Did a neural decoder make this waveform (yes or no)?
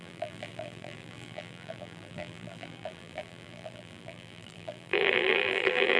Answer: yes